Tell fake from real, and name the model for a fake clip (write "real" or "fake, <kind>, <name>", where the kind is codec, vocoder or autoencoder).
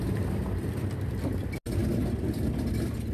real